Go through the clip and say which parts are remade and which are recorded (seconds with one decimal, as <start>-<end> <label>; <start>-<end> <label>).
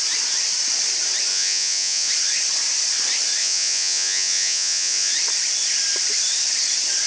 0.0-1.3 recorded; 1.3-2.1 remade; 2.1-3.4 recorded; 3.4-5.1 remade; 5.1-7.1 recorded